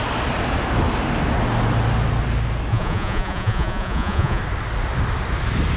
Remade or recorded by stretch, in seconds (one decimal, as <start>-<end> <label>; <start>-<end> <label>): 0.0-2.7 recorded; 2.7-4.4 remade; 4.4-5.8 recorded